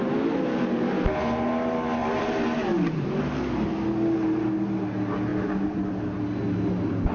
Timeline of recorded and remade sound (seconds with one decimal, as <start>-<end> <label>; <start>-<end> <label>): 0.0-2.0 recorded; 2.0-3.2 remade; 3.2-5.3 recorded; 5.3-5.9 remade; 5.9-7.1 recorded

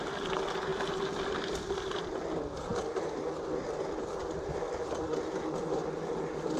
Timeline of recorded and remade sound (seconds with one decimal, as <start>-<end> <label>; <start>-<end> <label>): 0.0-0.7 recorded; 0.7-2.2 remade; 2.2-6.6 recorded

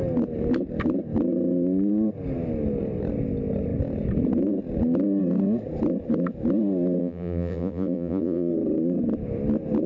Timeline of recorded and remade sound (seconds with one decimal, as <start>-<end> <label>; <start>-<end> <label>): 0.0-7.0 recorded; 7.0-8.5 remade; 8.5-9.9 recorded

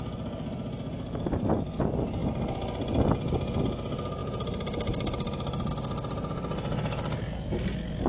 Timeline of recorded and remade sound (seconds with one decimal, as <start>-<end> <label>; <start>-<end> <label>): 0.0-4.2 recorded; 4.2-5.7 remade; 5.7-8.1 recorded

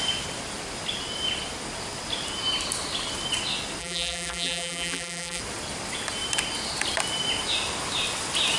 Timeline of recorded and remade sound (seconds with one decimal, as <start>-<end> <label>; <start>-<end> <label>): 0.0-3.8 recorded; 3.8-5.4 remade; 5.4-8.6 recorded

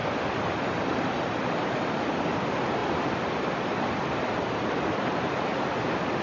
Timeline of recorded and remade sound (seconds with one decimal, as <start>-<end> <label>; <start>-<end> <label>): 0.0-1.6 recorded; 1.6-2.8 remade; 2.8-4.9 recorded; 4.9-6.2 remade

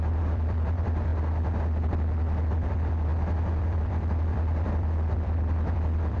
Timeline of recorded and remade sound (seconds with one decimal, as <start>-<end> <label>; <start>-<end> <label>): 0.0-1.1 remade; 1.1-2.5 recorded; 2.5-3.1 remade; 3.1-3.6 recorded; 3.6-6.2 remade

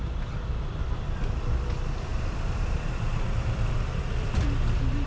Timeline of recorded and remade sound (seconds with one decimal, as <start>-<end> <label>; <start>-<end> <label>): 0.0-2.1 recorded; 2.1-3.8 remade; 3.8-5.1 recorded